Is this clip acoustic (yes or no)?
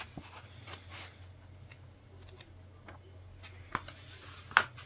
yes